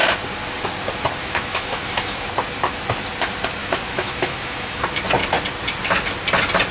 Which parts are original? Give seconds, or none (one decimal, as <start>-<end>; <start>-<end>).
0.0-1.2; 2.3-3.6; 4.8-6.7